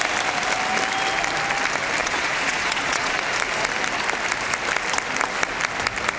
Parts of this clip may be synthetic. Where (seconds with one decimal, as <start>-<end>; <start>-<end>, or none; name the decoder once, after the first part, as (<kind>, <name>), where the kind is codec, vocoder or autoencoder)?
2.0-3.2 (vocoder, Vocos)